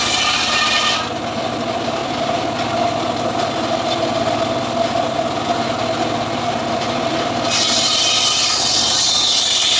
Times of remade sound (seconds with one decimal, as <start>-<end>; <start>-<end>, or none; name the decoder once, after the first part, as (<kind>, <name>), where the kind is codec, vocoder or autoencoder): none